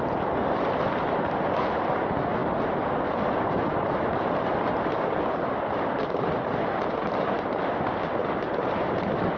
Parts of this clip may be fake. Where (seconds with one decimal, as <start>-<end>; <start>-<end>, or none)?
none